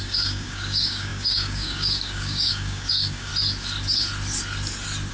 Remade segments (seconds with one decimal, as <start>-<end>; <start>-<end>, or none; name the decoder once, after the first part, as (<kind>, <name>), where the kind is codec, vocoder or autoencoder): 0.0-3.3 (codec, DAC)